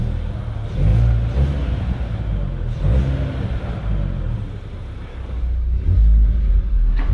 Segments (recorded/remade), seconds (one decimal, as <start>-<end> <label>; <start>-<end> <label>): 0.0-5.1 recorded; 5.1-7.1 remade